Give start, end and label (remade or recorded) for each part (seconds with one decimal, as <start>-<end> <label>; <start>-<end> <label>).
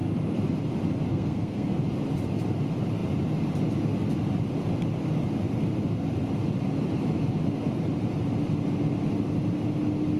0.0-1.1 recorded; 1.1-1.8 remade; 1.8-10.2 recorded